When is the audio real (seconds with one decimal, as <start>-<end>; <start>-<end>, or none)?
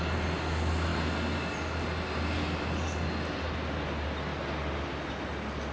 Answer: 0.0-5.7